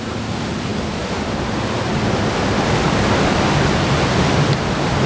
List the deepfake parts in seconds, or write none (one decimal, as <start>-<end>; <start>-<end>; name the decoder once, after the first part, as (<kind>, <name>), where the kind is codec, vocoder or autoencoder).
none